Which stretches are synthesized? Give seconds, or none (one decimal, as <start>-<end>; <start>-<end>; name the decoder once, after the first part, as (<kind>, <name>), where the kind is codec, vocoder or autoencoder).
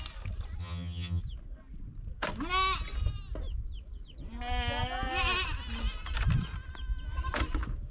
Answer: 0.6-1.2 (vocoder, HiFi-GAN)